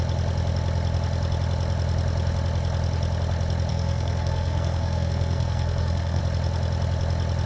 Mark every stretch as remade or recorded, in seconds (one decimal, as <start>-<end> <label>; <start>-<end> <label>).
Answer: 0.0-3.7 recorded; 3.7-6.2 remade; 6.2-7.5 recorded